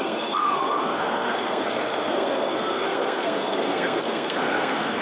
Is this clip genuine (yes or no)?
no